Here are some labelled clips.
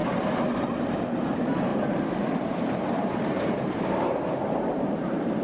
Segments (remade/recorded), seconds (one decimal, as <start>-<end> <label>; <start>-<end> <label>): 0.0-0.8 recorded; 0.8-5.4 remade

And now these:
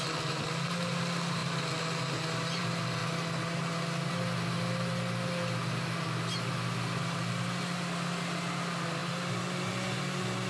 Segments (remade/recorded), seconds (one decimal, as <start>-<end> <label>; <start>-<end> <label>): 0.0-9.0 recorded; 9.0-9.7 remade; 9.7-10.5 recorded

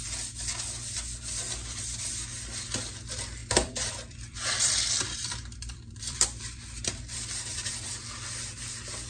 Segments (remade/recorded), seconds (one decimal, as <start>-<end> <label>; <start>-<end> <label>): 0.0-3.4 recorded; 3.4-7.7 remade; 7.7-9.1 recorded

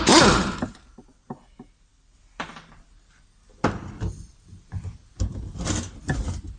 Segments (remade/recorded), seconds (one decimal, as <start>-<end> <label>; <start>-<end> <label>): 0.0-1.9 recorded; 1.9-5.9 remade; 5.9-6.6 recorded

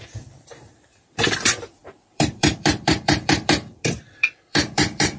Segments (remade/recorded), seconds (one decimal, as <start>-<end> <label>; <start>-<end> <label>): 0.0-5.2 remade

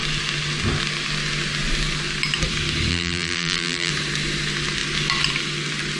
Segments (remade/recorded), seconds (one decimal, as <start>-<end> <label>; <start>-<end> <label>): 0.0-2.9 recorded; 2.9-3.9 remade; 3.9-6.0 recorded

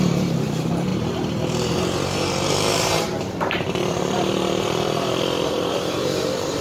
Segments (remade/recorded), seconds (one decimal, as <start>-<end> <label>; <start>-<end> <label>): 0.0-6.6 remade

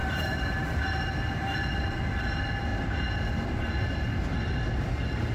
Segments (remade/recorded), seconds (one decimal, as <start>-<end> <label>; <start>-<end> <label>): 0.0-1.2 remade; 1.2-5.3 recorded